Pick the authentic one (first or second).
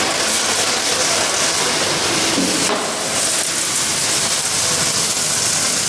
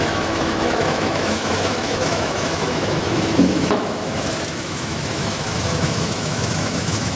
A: first